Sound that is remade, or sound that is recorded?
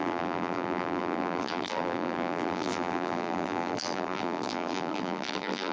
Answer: remade